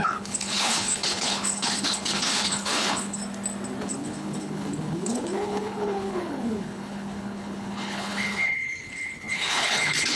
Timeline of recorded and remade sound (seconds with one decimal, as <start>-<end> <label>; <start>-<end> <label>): 0.0-3.2 remade; 3.2-3.8 recorded; 3.8-10.2 remade